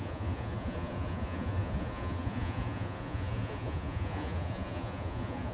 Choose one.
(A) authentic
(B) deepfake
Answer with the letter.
B